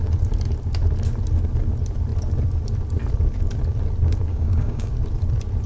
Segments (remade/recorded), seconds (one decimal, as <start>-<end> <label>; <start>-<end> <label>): 0.0-4.3 recorded; 4.3-4.9 remade; 4.9-5.7 recorded